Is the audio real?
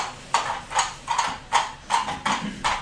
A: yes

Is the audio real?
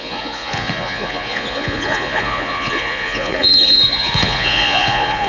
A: no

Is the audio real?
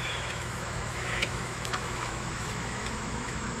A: no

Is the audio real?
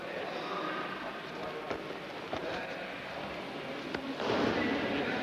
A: yes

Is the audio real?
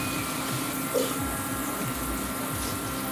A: yes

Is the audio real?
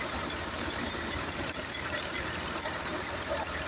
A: no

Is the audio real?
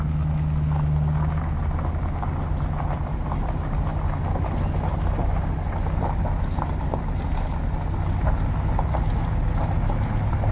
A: yes